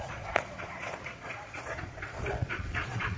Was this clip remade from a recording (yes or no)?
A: yes